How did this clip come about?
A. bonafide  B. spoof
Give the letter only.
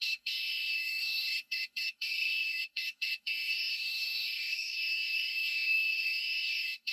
B